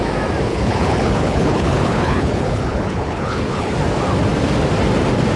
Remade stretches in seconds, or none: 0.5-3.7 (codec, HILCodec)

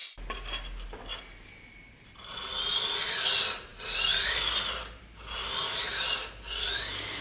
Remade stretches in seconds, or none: none

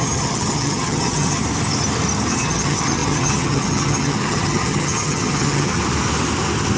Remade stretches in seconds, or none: 0.0-1.4 (vocoder, HiFi-GAN); 2.3-5.8

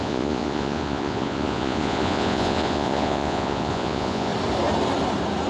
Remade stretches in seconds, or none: 0.0-4.3 (vocoder, Vocos)

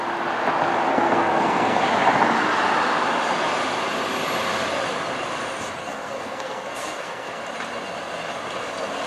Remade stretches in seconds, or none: 0.9-1.8 (codec, SNAC); 5.8-7.4

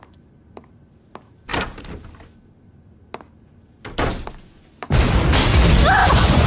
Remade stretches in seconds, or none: 6.0-6.5 (vocoder, Vocos)

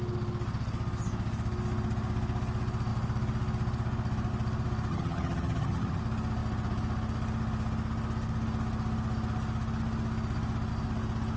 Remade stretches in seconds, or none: 4.9-6.0 (vocoder, HiFi-GAN)

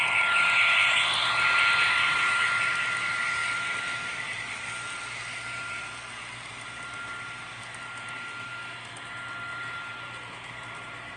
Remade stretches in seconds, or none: 3.4-8.5 (vocoder, BigVGAN v2); 9.5-10.5